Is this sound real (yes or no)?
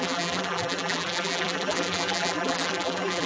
no